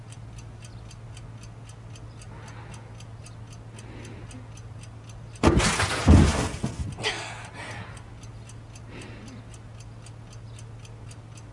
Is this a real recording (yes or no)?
yes